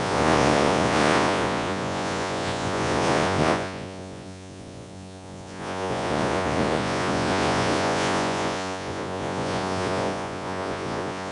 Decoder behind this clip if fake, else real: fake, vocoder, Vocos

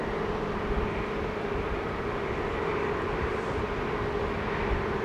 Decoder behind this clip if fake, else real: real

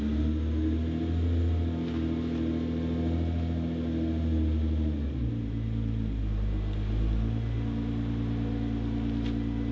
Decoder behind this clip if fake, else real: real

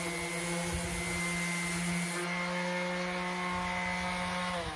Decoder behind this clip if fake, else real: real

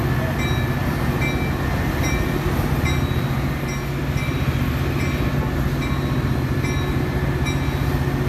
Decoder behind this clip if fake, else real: real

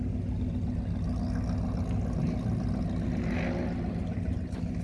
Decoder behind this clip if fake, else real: real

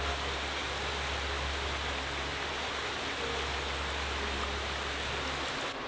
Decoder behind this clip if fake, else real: real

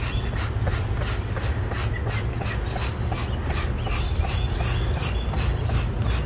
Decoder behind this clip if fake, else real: real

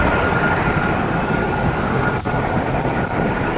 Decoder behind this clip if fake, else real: real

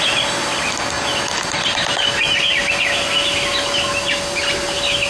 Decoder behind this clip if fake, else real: real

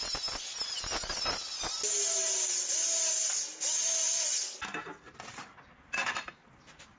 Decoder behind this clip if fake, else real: real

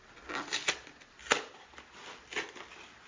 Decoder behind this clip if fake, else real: real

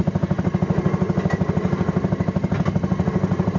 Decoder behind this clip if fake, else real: real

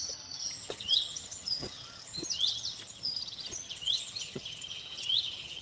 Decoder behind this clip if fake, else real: fake, vocoder, HiFi-GAN